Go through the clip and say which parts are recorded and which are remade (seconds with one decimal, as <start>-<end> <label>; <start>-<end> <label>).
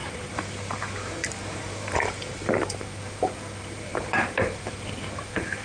0.0-5.6 remade